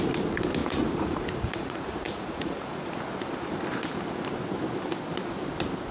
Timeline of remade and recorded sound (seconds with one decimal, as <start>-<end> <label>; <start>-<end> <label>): 0.0-0.6 recorded; 0.6-2.9 remade; 2.9-5.9 recorded

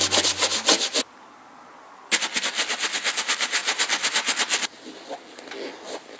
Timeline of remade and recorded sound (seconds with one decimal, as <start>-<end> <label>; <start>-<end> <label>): 0.0-6.2 recorded